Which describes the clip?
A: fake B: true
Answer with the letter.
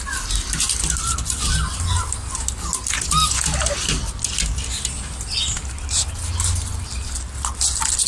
B